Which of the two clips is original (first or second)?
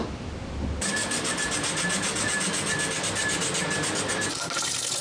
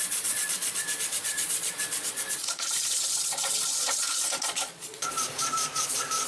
first